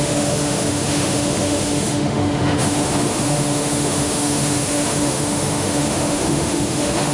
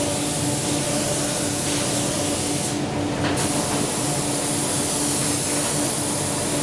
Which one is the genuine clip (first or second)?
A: second